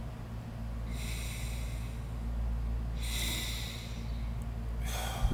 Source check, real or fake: real